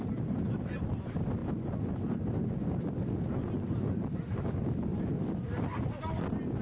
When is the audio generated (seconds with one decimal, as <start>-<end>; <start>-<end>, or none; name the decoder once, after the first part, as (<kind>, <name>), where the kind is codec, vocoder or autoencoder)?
4.9-6.0 (vocoder, BigVGAN v2)